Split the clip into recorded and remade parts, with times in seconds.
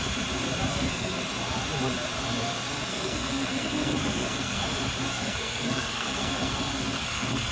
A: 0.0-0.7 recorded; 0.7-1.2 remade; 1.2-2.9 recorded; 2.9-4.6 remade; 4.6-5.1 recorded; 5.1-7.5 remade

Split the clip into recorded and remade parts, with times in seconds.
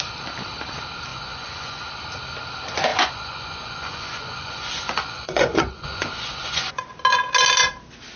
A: 0.0-1.1 recorded; 1.1-1.8 remade; 1.8-2.9 recorded; 2.9-6.9 remade; 6.9-8.2 recorded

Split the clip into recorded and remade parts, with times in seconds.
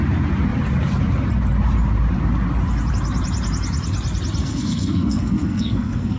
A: 0.0-4.4 recorded; 4.4-6.2 remade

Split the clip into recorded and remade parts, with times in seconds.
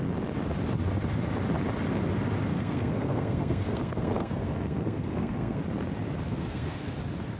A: 0.0-2.5 recorded; 2.5-5.6 remade; 5.6-6.3 recorded; 6.3-6.9 remade; 6.9-7.4 recorded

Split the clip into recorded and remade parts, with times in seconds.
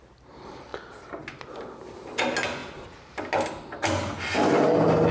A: 0.0-5.1 recorded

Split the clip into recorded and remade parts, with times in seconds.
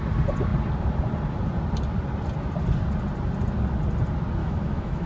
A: 0.0-4.4 recorded; 4.4-5.1 remade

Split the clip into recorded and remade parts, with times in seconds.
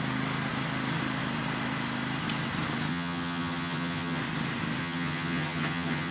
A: 0.0-2.9 recorded; 2.9-4.2 remade; 4.2-4.8 recorded; 4.8-6.1 remade